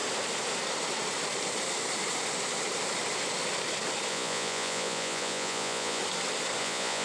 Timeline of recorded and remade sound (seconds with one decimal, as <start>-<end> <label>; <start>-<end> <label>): 0.0-4.1 recorded; 4.1-6.0 remade; 6.0-6.6 recorded; 6.6-7.0 remade